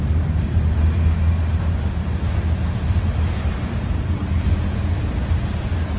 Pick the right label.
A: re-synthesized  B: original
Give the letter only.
B